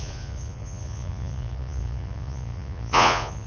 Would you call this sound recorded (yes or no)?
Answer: no